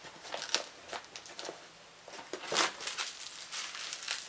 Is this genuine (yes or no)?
yes